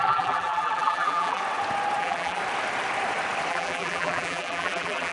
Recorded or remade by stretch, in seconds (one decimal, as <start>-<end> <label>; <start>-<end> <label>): 0.0-1.4 remade; 1.4-2.0 recorded; 2.0-2.4 remade; 2.4-3.5 recorded; 3.5-5.1 remade